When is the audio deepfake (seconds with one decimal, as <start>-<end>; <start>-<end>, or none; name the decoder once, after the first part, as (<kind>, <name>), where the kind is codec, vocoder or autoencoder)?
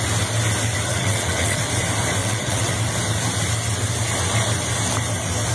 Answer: 0.9-1.7 (vocoder, WaveNeXt); 2.2-2.7